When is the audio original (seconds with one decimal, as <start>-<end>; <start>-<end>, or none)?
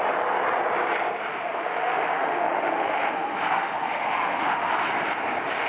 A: 0.0-1.3; 4.7-5.7